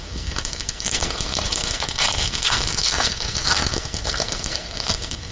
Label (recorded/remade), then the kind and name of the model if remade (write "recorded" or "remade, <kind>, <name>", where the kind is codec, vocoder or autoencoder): remade, codec, SNAC